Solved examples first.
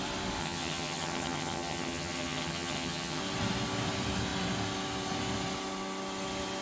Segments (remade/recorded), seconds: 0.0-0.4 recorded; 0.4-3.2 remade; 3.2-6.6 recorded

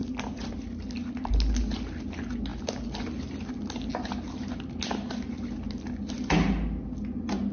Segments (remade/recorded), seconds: 0.0-7.5 recorded

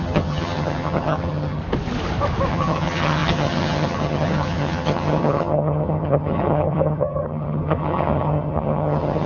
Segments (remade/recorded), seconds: 0.0-1.6 remade; 1.6-2.5 recorded; 2.5-9.3 remade